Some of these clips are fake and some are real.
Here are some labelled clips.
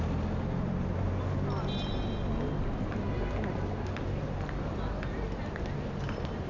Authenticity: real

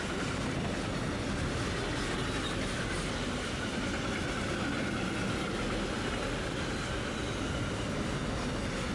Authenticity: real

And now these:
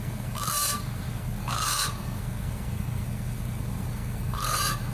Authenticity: fake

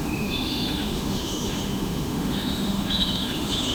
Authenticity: fake